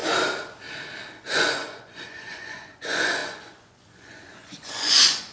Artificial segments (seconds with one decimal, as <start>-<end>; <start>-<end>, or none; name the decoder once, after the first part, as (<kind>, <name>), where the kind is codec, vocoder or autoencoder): 1.2-5.3 (vocoder, Vocos)